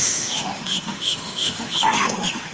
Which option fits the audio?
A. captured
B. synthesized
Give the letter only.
B